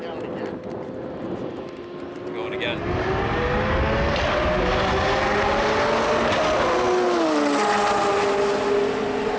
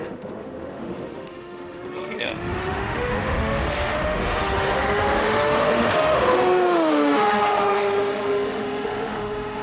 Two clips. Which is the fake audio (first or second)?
second